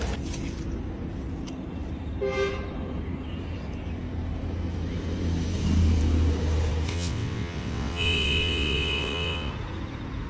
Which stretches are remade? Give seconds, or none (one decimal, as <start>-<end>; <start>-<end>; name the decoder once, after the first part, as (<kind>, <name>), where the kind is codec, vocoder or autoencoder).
6.9-9.5 (vocoder, WaveNeXt)